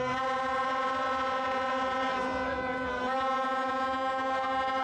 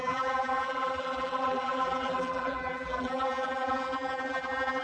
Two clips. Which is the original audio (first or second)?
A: first